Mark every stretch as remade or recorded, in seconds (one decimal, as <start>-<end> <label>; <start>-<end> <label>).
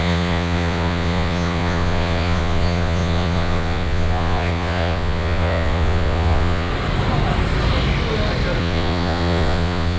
0.0-6.7 remade; 6.7-8.6 recorded; 8.6-10.0 remade